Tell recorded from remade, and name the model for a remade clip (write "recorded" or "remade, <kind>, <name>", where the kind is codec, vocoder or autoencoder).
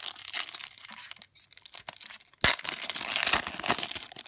recorded